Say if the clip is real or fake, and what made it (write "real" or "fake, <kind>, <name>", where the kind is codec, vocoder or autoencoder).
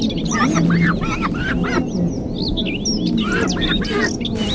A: real